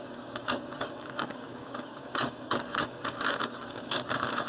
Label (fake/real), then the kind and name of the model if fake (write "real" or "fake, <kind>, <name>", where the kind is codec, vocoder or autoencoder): fake, codec, DAC